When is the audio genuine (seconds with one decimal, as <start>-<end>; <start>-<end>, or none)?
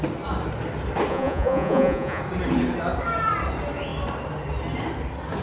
0.0-1.1; 2.2-5.4